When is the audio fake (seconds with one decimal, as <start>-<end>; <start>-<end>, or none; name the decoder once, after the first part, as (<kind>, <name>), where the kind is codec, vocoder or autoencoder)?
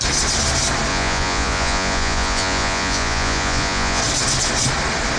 0.9-4.0 (vocoder, Vocos)